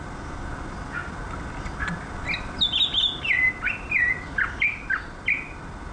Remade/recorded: recorded